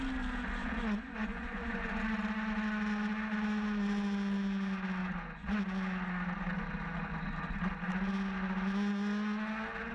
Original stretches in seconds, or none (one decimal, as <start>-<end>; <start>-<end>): 0.0-0.6; 2.0-5.0; 5.6-9.9